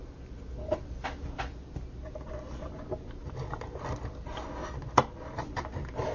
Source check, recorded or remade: recorded